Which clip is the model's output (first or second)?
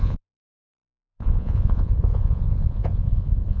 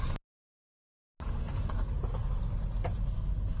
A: first